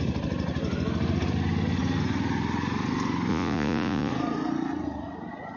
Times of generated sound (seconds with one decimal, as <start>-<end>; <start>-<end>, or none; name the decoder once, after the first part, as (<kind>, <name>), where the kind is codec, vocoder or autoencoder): 3.3-4.1 (vocoder, Vocos)